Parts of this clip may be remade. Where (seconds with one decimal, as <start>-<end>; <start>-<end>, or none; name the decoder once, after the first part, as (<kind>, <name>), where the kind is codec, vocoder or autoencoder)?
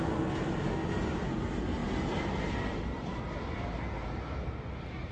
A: 1.8-3.2 (vocoder, BigVGAN v2)